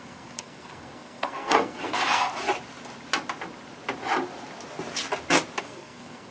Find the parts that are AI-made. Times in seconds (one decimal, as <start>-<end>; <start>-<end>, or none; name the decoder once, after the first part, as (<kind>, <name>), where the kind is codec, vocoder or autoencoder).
0.0-2.3 (codec, SNAC); 5.6-6.3